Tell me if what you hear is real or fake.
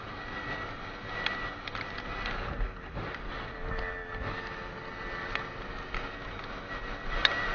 real